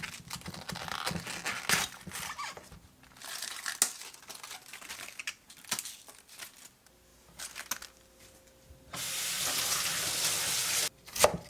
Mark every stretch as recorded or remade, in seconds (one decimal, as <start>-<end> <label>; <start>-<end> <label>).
0.0-11.5 recorded